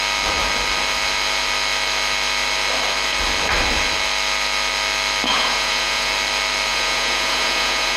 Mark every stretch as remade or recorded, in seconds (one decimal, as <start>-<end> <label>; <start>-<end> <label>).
0.0-5.3 recorded; 5.3-6.1 remade; 6.1-6.7 recorded; 6.7-8.0 remade